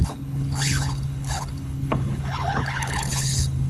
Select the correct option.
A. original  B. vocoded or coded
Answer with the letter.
B